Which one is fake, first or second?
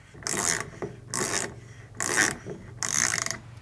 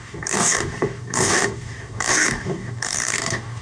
second